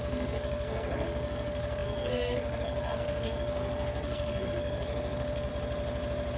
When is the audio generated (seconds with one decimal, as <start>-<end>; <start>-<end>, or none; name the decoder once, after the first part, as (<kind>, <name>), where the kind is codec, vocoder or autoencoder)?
0.0-5.5 (codec, SNAC)